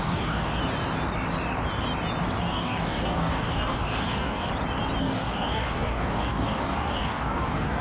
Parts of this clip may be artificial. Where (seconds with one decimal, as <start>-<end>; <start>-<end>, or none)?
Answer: 0.0-0.6; 2.4-4.5; 5.0-7.8